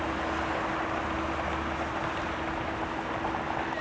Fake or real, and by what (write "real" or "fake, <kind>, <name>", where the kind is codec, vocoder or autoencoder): real